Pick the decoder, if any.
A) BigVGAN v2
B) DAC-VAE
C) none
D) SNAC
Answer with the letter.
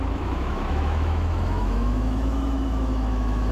B